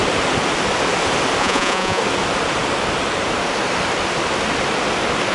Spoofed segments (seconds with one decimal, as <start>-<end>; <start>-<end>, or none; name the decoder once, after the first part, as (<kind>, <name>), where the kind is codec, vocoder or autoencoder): 1.4-2.0 (vocoder, Vocos)